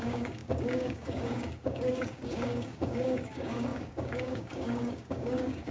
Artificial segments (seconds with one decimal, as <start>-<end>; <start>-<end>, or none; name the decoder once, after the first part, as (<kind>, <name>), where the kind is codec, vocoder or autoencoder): 0.0-5.7 (codec, DAC)